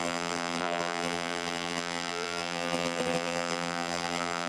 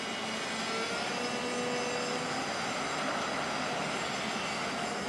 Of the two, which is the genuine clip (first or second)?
second